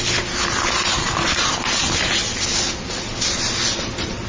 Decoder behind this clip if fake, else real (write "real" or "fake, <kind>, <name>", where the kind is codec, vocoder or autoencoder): real